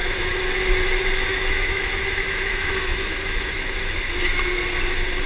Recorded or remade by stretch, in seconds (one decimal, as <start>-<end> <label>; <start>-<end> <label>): 0.0-0.5 remade; 0.5-1.3 recorded; 1.3-4.0 remade; 4.0-5.3 recorded

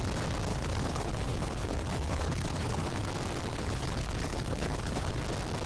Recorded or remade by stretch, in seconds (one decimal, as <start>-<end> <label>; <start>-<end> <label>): 0.0-0.5 recorded; 0.5-3.1 remade; 3.1-3.5 recorded; 3.5-5.2 remade; 5.2-5.7 recorded

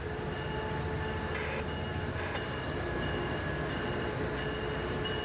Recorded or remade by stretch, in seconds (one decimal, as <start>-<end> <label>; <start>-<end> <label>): 0.0-5.2 recorded

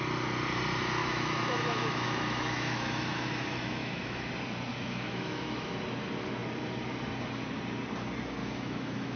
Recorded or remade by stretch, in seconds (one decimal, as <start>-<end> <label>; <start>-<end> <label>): 0.0-1.0 recorded; 1.0-4.3 remade; 4.3-4.7 recorded; 4.7-5.8 remade; 5.8-8.4 recorded; 8.4-9.2 remade